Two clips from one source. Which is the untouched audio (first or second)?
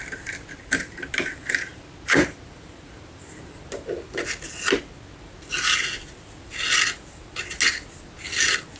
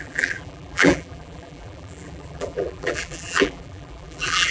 first